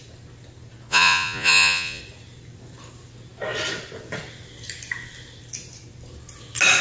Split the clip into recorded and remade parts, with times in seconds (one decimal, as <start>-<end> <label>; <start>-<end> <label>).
0.0-0.9 recorded; 0.9-2.0 remade; 2.0-6.8 recorded